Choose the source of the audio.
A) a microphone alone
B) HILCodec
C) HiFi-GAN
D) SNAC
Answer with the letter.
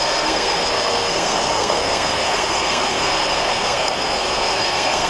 D